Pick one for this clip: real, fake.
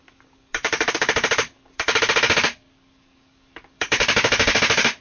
fake